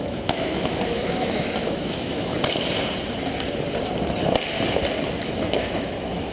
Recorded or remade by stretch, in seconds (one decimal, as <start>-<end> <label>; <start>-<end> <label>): 0.0-2.3 remade; 2.3-5.2 recorded; 5.2-6.3 remade